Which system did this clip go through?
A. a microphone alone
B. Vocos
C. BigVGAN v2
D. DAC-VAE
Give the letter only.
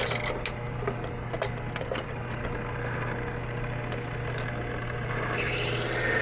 A